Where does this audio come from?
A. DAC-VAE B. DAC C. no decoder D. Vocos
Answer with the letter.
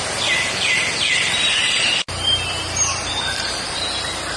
C